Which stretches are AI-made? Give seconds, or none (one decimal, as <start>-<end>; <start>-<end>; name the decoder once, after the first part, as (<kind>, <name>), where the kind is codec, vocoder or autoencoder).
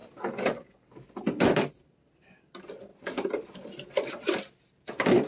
none